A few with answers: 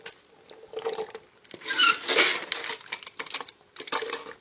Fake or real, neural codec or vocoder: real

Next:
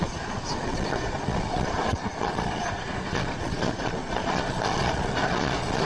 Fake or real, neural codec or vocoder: fake, vocoder, Vocos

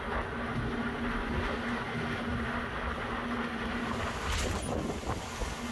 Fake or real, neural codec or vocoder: real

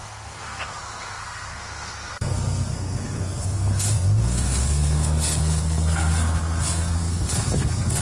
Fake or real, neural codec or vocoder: fake, codec, SNAC